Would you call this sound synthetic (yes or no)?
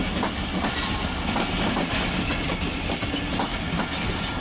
no